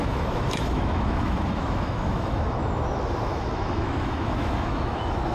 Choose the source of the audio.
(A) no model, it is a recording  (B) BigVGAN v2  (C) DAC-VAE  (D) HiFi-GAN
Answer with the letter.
C